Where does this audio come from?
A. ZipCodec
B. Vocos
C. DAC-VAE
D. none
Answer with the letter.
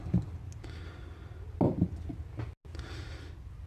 D